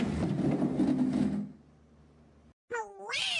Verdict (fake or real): real